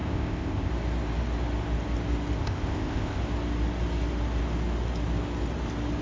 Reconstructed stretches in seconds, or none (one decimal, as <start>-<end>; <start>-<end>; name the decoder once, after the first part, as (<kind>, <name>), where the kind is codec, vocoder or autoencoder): 0.0-0.7 (codec, ZipCodec); 2.4-3.2